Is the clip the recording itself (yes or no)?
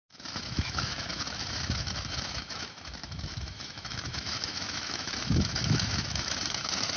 no